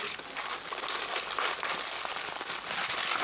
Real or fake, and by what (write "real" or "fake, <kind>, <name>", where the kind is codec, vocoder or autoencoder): real